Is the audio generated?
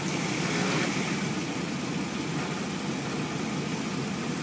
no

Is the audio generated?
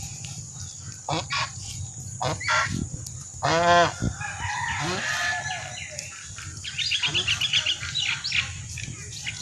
no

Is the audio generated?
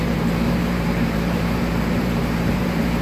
yes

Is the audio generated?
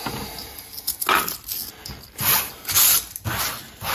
no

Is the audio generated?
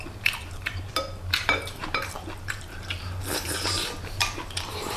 yes